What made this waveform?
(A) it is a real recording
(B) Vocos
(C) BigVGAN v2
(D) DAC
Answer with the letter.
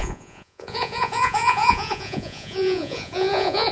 B